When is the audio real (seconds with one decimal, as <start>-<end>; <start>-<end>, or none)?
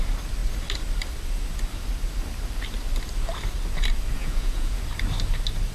0.0-4.2; 4.8-5.7